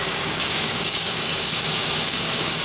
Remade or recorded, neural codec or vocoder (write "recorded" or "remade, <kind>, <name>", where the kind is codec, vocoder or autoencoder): remade, codec, DAC